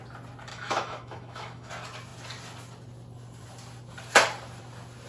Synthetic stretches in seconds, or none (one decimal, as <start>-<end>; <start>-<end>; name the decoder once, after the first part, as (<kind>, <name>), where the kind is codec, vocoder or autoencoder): 0.5-1.7 (autoencoder, DAC-VAE)